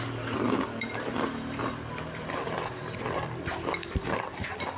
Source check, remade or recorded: remade